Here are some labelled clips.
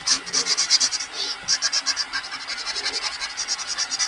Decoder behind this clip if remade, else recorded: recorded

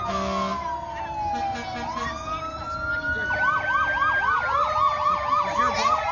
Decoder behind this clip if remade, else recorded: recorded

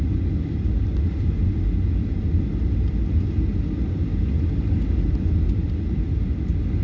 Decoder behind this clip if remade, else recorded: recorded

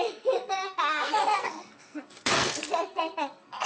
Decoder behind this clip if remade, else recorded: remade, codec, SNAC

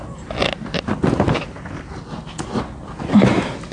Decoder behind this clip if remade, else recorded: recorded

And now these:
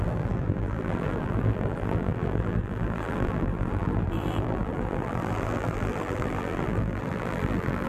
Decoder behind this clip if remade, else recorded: remade, vocoder, BigVGAN v2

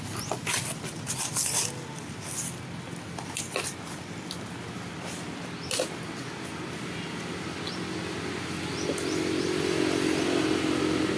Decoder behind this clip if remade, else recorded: recorded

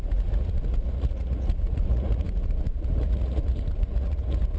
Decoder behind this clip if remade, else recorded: remade, vocoder, Vocos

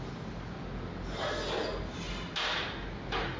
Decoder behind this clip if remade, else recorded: recorded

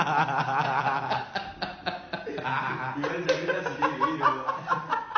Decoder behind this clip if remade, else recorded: recorded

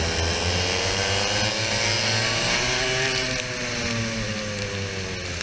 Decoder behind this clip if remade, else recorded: recorded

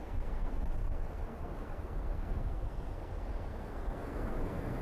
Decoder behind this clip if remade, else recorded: remade, codec, SNAC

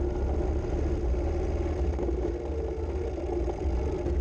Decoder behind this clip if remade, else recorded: recorded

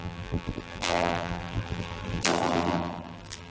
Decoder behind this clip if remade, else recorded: remade, vocoder, BigVGAN v2